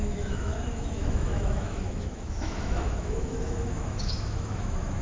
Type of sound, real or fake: fake